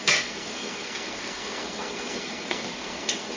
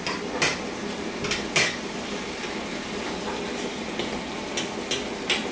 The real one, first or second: second